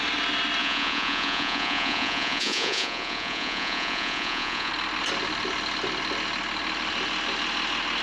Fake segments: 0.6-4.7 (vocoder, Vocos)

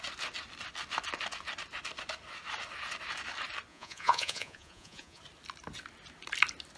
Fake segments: 3.7-5.2 (vocoder, Vocos)

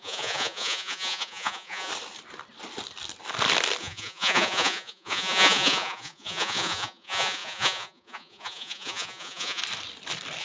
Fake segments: 0.0-1.9 (vocoder, Vocos); 3.8-9.6

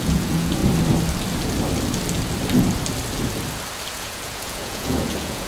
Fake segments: 0.0-0.6 (vocoder, Vocos); 3.9-5.5